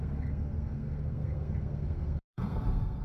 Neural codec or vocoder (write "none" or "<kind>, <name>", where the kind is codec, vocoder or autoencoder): codec, SNAC